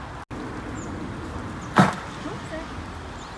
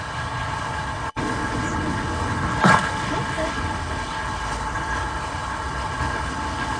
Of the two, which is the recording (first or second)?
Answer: first